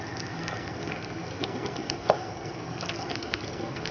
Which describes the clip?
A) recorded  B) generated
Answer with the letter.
B